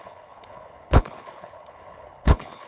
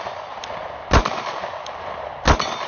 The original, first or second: second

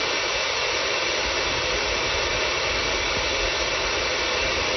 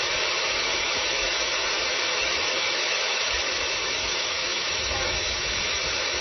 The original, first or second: first